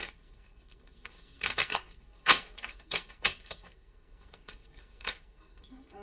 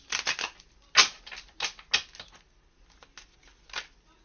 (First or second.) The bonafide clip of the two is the second